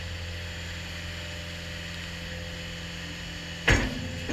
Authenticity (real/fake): real